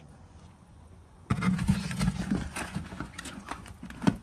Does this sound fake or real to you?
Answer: fake